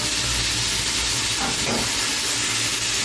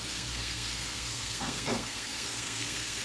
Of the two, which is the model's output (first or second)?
second